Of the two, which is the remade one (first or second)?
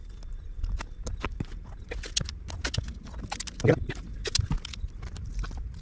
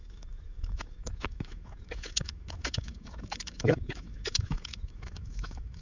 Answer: second